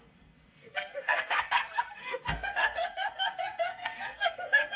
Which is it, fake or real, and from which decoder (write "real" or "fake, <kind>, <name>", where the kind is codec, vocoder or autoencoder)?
fake, codec, SNAC